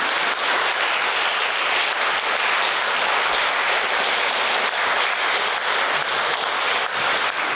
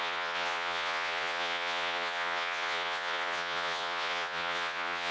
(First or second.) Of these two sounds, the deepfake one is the second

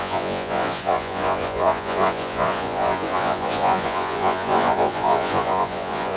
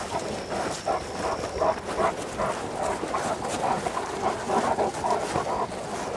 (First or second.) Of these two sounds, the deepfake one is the first